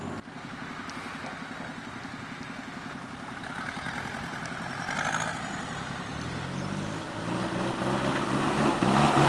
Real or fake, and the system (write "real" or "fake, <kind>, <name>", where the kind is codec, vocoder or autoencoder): real